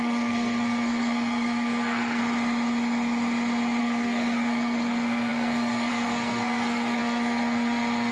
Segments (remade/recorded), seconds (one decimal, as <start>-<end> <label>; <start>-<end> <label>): 0.0-2.2 remade; 2.2-3.8 recorded; 3.8-8.1 remade